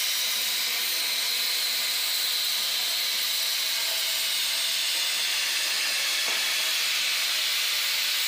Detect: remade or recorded recorded